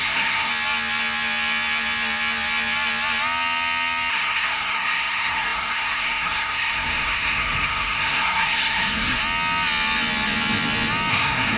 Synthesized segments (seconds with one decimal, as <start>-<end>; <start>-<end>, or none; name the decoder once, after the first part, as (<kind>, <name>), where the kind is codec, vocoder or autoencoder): 0.0-0.5 (codec, SNAC); 4.1-9.2; 11.1-11.6